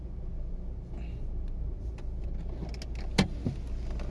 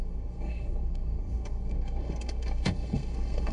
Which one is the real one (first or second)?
first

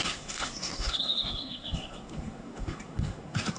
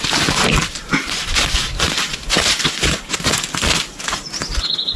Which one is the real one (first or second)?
second